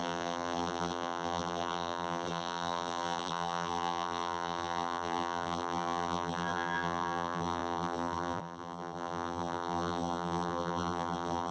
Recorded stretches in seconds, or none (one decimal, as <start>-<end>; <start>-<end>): none